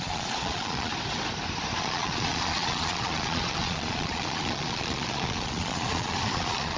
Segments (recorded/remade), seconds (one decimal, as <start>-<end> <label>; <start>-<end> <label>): 0.0-0.9 remade; 0.9-1.8 recorded; 1.8-6.8 remade